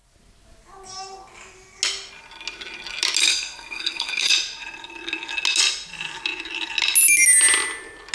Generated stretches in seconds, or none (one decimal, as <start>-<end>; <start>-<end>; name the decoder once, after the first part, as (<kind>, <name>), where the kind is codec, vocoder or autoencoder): 3.2-4.3 (codec, SNAC)